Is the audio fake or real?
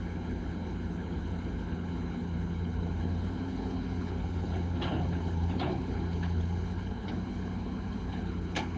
fake